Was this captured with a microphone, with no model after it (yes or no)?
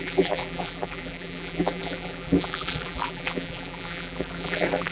no